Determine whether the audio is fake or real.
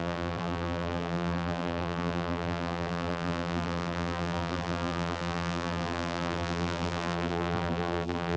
fake